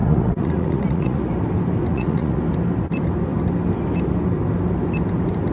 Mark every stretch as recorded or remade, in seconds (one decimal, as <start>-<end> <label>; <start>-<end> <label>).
0.0-1.3 remade; 1.3-1.9 recorded; 1.9-2.4 remade; 2.4-5.5 recorded